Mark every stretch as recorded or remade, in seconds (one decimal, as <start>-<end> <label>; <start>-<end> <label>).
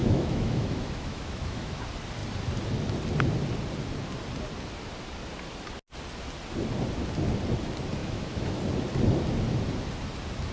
0.0-1.8 remade; 1.8-8.0 recorded; 8.0-8.6 remade; 8.6-10.5 recorded